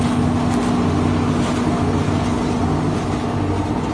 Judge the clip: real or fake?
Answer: real